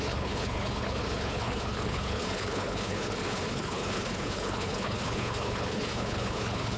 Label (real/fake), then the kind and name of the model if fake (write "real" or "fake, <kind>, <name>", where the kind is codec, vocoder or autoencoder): fake, codec, HILCodec